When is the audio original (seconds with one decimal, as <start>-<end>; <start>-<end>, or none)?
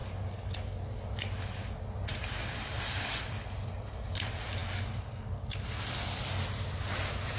0.0-7.4